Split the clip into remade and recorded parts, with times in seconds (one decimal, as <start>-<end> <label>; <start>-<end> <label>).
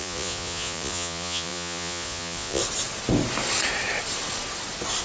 0.0-2.6 remade; 2.6-5.0 recorded